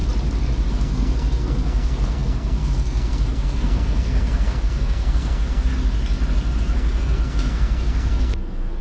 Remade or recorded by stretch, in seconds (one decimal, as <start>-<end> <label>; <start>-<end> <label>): 0.0-0.7 recorded; 0.7-5.7 remade; 5.7-6.6 recorded; 6.6-8.8 remade